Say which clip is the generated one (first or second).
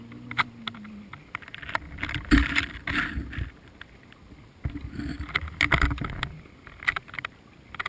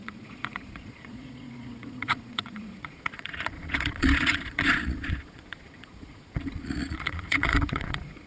second